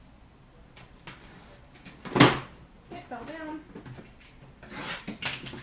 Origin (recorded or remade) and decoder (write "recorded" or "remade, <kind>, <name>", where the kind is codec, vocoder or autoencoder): recorded